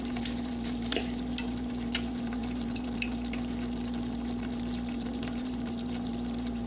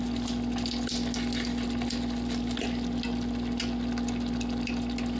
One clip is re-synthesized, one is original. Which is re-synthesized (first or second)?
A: first